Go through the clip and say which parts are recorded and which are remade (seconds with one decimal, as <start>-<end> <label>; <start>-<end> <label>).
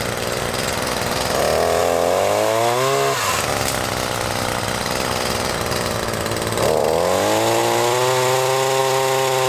0.0-9.5 recorded